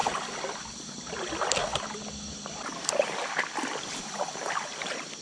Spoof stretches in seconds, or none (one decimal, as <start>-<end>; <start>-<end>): none